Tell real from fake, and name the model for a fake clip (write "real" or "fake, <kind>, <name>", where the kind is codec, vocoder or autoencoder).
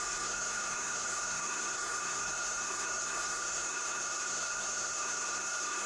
fake, codec, SNAC